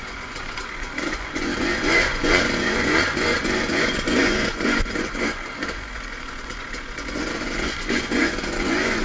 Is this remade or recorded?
remade